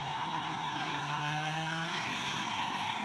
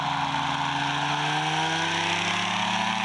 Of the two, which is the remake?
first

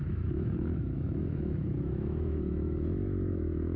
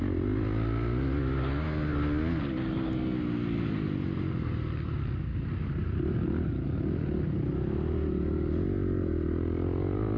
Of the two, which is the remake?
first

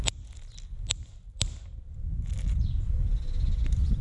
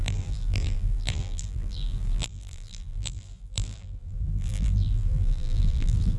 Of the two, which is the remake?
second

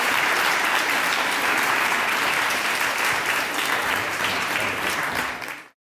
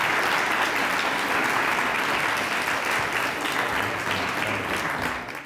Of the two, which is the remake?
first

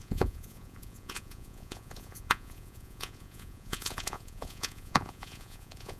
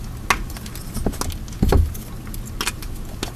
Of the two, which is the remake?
first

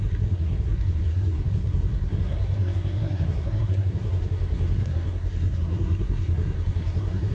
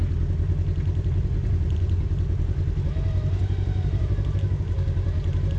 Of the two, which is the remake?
first